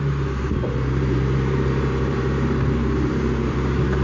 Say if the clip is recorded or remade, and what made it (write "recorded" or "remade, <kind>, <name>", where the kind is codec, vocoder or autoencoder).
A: remade, vocoder, BigVGAN v2